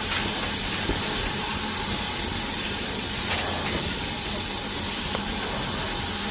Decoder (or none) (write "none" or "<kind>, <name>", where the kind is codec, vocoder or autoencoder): none